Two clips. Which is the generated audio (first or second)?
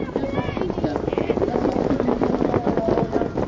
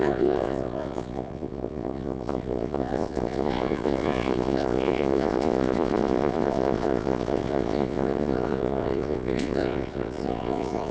second